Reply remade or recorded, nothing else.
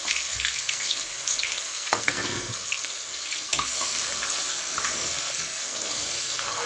remade